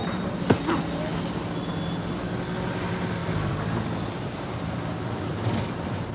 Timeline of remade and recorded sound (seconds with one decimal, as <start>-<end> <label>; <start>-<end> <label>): 0.0-0.6 remade; 0.6-3.2 recorded; 3.2-5.4 remade; 5.4-6.1 recorded